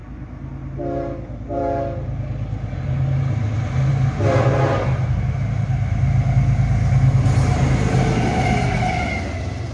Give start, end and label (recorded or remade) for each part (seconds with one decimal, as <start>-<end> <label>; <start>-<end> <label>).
0.0-9.7 recorded

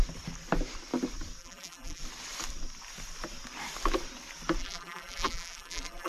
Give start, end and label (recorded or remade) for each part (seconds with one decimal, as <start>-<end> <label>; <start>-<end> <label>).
0.0-1.4 recorded; 1.4-2.0 remade; 2.0-4.6 recorded; 4.6-6.1 remade

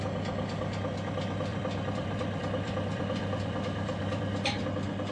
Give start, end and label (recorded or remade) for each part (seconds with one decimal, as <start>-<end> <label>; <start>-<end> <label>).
0.0-1.5 recorded; 1.5-4.6 remade; 4.6-5.1 recorded

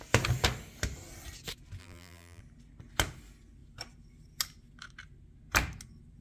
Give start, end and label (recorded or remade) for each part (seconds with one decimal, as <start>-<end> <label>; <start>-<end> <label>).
0.0-1.8 recorded; 1.8-2.4 remade; 2.4-6.2 recorded

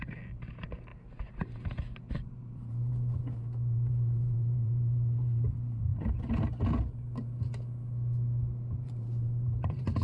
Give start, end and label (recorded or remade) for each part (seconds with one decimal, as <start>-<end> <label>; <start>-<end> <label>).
0.0-5.9 remade; 5.9-8.8 recorded; 8.8-10.0 remade

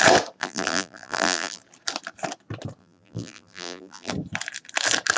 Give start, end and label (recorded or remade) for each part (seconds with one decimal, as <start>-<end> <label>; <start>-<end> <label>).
0.0-0.4 recorded; 0.4-1.6 remade; 1.6-2.8 recorded; 2.8-4.1 remade; 4.1-5.2 recorded

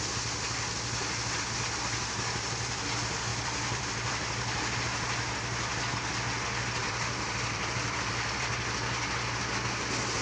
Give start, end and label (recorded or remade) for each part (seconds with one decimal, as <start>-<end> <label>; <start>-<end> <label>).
0.0-3.3 recorded; 3.3-4.6 remade; 4.6-6.8 recorded; 6.8-8.5 remade; 8.5-10.2 recorded